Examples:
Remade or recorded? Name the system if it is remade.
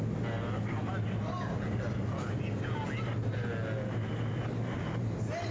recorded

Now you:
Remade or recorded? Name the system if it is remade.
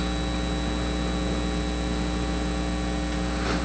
recorded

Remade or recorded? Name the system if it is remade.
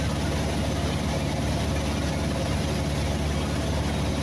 recorded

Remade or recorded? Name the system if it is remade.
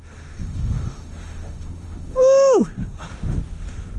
remade, autoencoder, DAC-VAE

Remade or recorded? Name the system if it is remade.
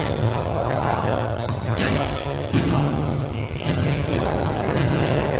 remade, vocoder, HiFi-GAN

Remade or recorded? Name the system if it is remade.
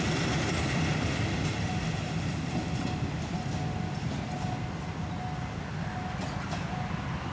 recorded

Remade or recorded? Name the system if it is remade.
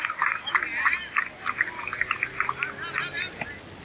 recorded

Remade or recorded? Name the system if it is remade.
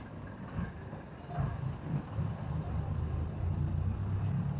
recorded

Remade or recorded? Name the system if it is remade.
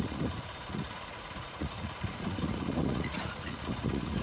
remade, vocoder, Vocos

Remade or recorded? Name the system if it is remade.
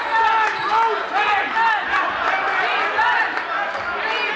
recorded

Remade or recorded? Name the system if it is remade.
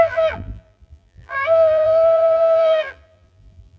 remade, vocoder, BigVGAN v2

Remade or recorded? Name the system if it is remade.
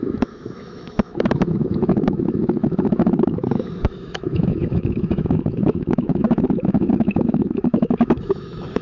remade, autoencoder, DAC-VAE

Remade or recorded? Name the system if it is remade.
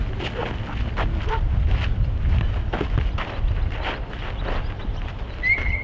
recorded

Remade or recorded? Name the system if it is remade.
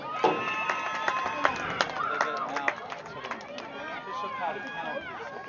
remade, vocoder, BigVGAN v2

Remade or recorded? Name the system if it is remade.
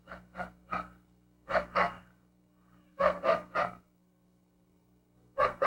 remade, codec, SNAC